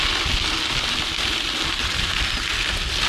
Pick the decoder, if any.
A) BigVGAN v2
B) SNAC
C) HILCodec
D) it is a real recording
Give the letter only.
D